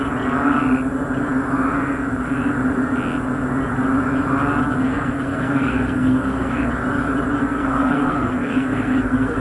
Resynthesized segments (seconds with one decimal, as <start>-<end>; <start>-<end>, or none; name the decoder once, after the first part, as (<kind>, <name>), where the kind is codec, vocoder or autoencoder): 4.9-6.7 (codec, SNAC); 7.4-9.4